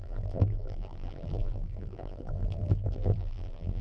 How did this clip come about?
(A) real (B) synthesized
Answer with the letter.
B